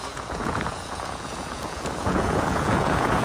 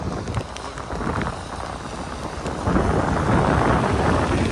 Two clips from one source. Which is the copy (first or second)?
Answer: first